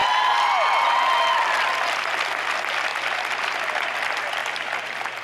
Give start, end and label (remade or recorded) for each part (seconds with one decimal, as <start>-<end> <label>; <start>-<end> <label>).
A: 0.0-1.2 remade; 1.2-5.2 recorded

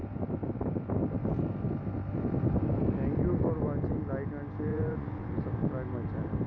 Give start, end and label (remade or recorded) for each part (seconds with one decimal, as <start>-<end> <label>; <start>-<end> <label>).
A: 0.0-4.7 recorded; 4.7-5.3 remade; 5.3-6.5 recorded

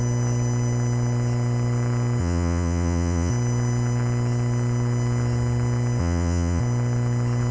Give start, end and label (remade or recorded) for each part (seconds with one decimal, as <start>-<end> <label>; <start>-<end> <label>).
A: 0.0-2.2 recorded; 2.2-3.3 remade; 3.3-6.0 recorded; 6.0-6.6 remade; 6.6-7.5 recorded

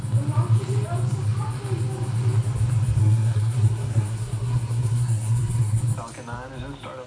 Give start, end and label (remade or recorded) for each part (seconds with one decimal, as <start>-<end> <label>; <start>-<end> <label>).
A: 0.0-3.0 recorded; 3.0-5.8 remade; 5.8-7.1 recorded